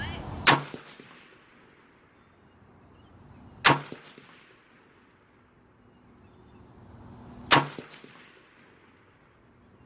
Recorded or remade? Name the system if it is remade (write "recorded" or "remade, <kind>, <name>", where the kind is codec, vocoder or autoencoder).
recorded